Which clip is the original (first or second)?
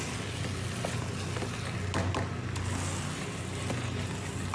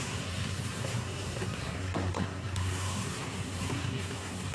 first